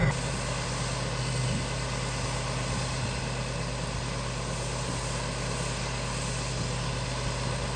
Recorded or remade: recorded